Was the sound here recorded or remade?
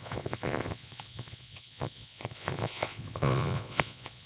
remade